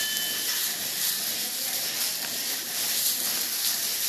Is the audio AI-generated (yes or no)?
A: no